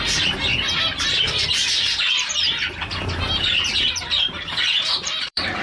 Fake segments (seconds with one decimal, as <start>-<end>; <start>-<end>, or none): 0.0-0.5; 3.9-5.6

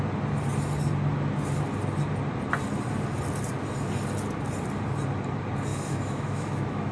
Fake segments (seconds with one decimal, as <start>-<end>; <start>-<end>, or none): 5.7-6.9

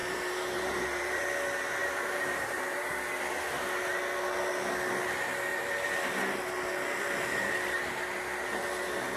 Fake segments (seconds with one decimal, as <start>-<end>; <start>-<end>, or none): 0.0-1.2; 1.8-2.6; 5.5-6.1

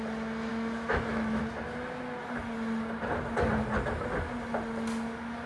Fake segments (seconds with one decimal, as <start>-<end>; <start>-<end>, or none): 0.5-1.4

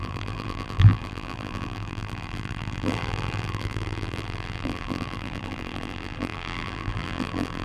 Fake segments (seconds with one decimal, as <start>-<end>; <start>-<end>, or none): 0.0-7.6

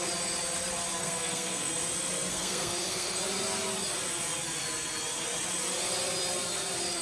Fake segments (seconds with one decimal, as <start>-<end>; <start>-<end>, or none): 1.0-1.7; 2.3-3.2

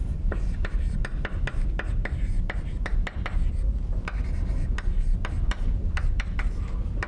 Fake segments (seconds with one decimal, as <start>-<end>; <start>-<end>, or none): none

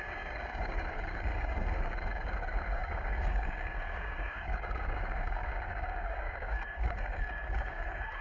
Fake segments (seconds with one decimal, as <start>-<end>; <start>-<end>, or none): 0.0-8.2